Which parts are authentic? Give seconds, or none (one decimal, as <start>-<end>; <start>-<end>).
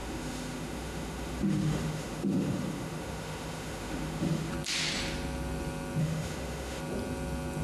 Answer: 4.5-6.0; 6.8-7.6